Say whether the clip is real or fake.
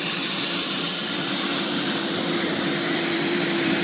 fake